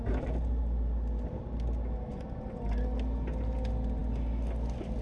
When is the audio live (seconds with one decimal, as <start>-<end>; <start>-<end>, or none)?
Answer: 0.0-2.1; 2.6-5.0